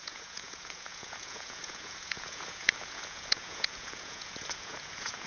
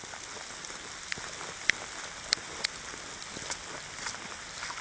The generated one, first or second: first